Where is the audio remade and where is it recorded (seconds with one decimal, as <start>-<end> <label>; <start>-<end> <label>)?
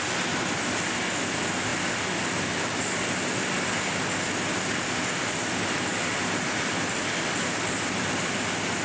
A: 0.0-8.8 recorded